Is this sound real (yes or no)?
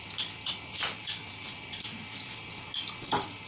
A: yes